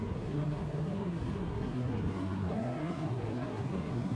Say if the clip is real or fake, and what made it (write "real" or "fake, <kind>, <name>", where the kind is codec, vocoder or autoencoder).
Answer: fake, codec, SNAC